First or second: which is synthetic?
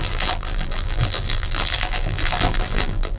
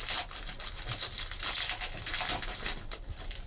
first